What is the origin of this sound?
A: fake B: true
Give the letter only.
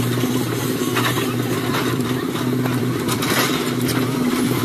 A